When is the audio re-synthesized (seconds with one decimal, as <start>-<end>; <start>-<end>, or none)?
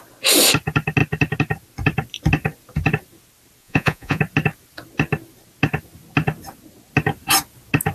3.6-4.2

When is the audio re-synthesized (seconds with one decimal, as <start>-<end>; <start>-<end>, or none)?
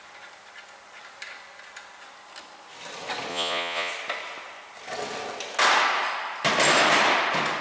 3.3-3.9